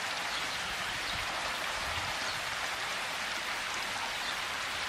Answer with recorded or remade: recorded